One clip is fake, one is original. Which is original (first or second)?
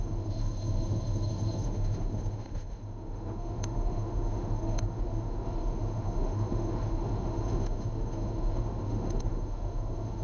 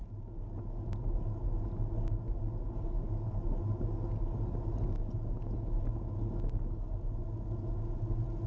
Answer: second